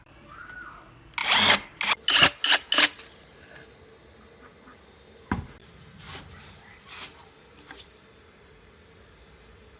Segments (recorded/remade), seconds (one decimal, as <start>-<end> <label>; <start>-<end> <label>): 0.0-4.7 recorded; 4.7-9.8 remade